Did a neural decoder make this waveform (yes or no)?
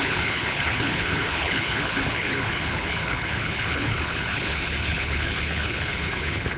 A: yes